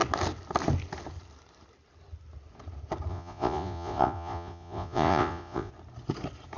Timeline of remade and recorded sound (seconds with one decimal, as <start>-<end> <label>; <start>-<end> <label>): 0.0-3.1 recorded; 3.1-5.7 remade; 5.7-6.6 recorded